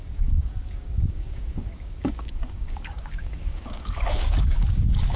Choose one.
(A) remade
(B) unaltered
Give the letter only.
A